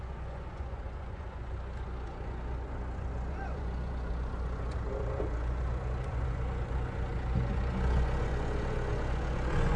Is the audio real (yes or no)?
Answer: no